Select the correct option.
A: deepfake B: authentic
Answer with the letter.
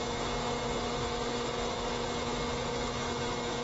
A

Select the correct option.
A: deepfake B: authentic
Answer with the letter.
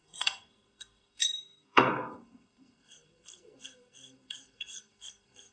A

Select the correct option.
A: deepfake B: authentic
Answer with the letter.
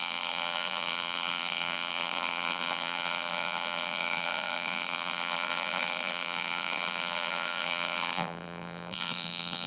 A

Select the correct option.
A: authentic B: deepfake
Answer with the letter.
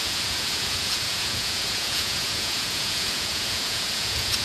B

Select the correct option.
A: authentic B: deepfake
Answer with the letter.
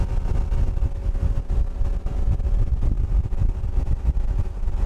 A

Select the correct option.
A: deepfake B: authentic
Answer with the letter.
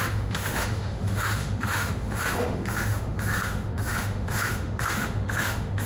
A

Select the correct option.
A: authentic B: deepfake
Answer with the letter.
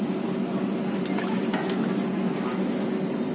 A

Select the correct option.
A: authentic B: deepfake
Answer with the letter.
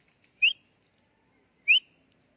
A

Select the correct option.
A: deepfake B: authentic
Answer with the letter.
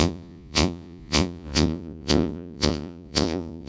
A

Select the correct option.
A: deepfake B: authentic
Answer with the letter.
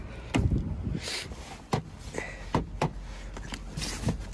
B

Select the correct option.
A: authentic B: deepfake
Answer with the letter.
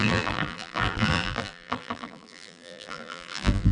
B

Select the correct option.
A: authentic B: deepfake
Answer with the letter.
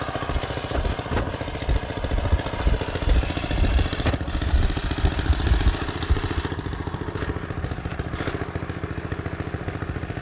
A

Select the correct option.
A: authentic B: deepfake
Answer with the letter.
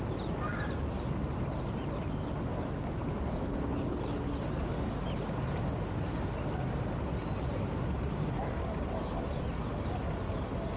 A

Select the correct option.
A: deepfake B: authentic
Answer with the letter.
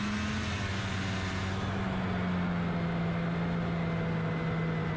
B